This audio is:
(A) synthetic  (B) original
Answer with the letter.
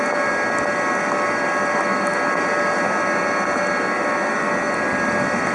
B